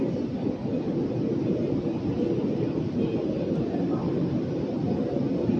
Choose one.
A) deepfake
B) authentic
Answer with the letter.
B